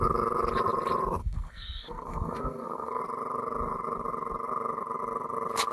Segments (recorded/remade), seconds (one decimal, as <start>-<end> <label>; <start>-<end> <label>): 0.0-1.2 recorded; 1.2-3.0 remade; 3.0-5.7 recorded